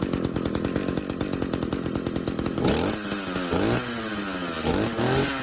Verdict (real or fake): real